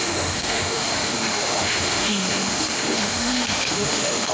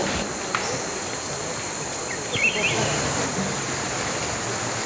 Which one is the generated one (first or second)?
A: first